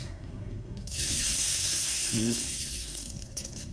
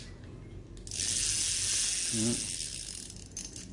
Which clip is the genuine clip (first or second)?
second